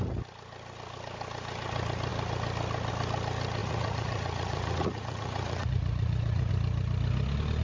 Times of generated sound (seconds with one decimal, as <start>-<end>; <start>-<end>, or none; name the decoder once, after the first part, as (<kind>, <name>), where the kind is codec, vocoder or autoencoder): 3.6-6.5 (vocoder, Vocos)